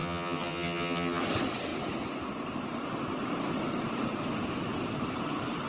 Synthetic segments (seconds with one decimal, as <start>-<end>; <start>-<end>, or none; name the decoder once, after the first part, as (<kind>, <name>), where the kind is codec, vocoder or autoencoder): 0.0-1.2 (vocoder, HiFi-GAN)